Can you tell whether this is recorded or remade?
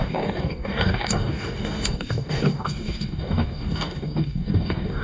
remade